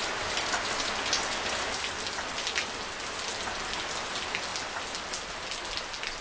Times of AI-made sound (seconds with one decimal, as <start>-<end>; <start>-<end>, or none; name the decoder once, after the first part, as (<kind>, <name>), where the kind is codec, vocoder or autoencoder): none